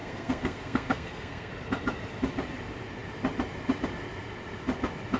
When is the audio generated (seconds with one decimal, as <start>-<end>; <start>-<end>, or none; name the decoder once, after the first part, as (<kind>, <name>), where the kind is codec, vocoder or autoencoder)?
0.0-1.5 (codec, SNAC)